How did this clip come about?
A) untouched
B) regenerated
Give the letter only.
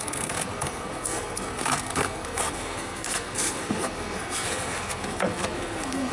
B